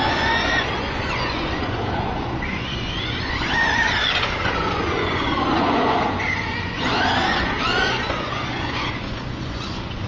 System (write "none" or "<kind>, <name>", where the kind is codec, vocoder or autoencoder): vocoder, Vocos